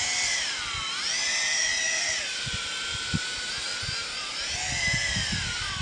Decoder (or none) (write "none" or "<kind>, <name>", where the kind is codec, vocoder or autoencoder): none